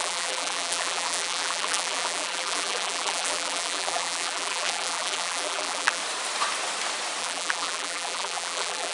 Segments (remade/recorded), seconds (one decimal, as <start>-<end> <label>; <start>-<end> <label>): 0.0-6.0 remade; 6.0-7.2 recorded; 7.2-8.9 remade